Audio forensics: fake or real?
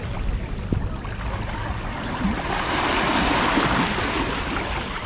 real